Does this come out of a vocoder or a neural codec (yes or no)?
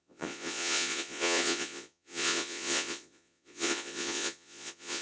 yes